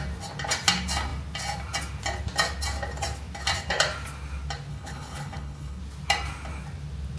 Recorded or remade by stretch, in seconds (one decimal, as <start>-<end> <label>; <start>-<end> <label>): 0.0-4.7 recorded; 4.7-5.8 remade; 5.8-7.2 recorded